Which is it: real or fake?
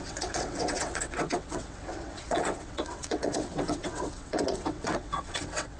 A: fake